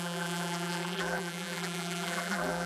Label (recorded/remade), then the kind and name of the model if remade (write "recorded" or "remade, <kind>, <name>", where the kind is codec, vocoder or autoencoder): remade, vocoder, BigVGAN v2